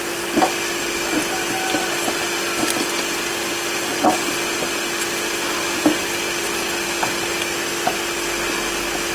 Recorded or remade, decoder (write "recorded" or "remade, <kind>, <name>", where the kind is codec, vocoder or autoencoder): recorded